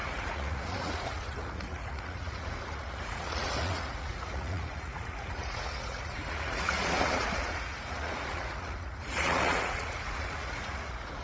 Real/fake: fake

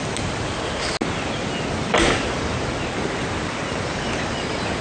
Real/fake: real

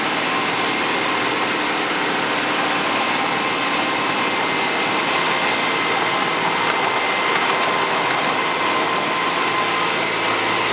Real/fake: real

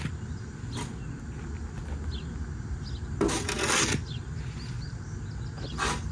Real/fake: real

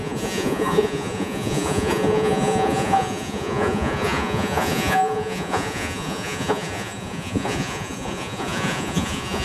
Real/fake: fake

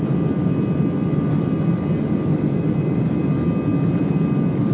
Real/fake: real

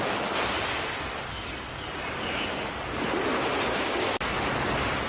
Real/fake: real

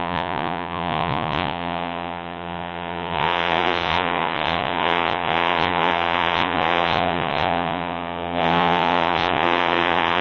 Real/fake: fake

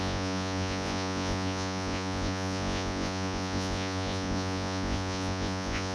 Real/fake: fake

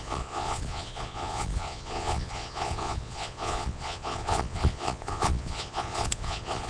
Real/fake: fake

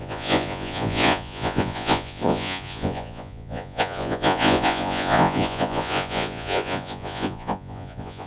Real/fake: fake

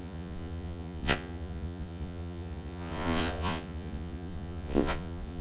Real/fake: fake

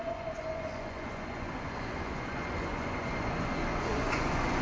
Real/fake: fake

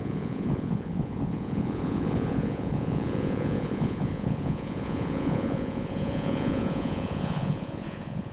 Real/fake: fake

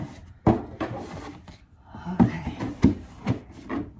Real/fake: real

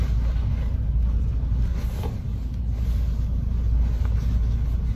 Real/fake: real